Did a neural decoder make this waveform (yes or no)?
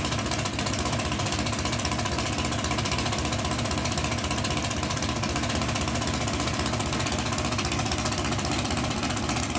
no